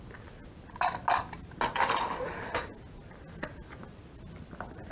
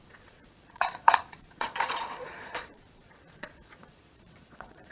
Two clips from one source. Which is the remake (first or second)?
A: second